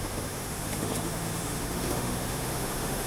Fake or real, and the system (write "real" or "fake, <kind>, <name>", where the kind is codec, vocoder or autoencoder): fake, autoencoder, DAC-VAE